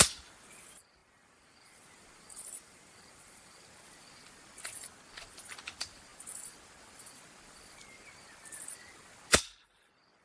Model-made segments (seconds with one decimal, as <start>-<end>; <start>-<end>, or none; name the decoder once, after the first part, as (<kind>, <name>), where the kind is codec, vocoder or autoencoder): 1.0-3.7 (vocoder, BigVGAN v2)